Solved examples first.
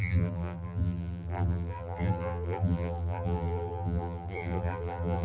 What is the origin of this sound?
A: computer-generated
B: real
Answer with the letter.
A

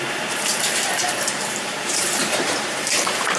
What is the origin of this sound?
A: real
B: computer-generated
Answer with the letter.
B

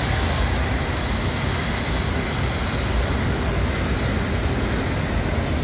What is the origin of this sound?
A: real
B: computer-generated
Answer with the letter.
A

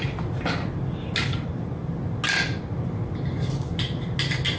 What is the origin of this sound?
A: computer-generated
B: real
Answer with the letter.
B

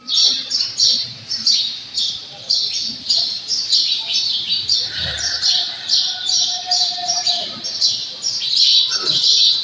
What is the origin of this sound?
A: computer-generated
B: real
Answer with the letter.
A